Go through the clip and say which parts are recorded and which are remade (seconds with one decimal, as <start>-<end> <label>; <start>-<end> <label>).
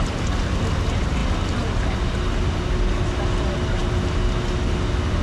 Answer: 0.0-5.2 recorded